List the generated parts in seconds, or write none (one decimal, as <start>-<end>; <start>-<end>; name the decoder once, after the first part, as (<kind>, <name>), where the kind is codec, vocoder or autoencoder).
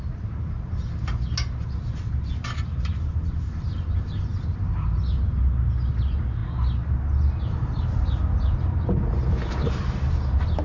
none